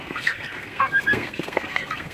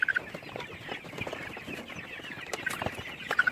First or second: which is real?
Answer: second